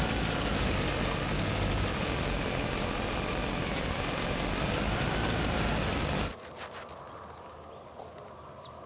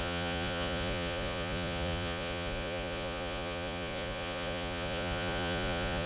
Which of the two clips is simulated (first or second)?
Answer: second